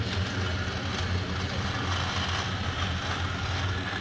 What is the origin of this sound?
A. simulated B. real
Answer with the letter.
B